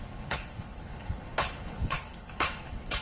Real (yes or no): no